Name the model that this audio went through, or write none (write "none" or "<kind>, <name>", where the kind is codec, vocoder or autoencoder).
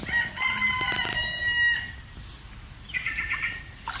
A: none